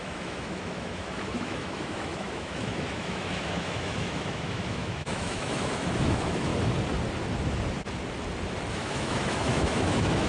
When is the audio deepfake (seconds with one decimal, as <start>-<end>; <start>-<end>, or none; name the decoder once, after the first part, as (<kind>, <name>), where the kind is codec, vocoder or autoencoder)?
0.0-6.5 (autoencoder, DAC-VAE); 8.7-10.3